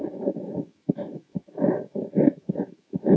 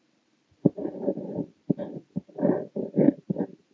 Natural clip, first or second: second